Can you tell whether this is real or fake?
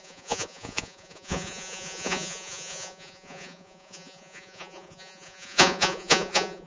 fake